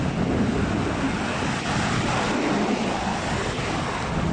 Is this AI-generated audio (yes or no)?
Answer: no